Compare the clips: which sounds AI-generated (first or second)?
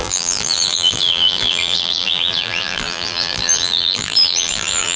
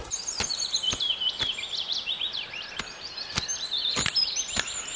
first